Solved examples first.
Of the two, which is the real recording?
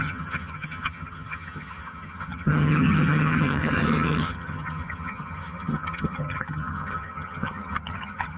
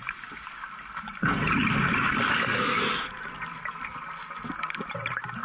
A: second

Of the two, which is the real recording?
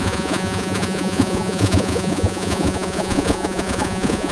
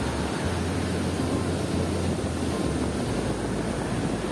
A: second